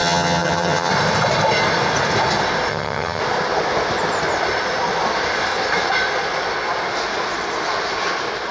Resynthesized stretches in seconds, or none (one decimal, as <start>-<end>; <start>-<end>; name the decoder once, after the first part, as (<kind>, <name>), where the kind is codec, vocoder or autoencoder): 0.0-0.9 (vocoder, HiFi-GAN); 2.7-3.2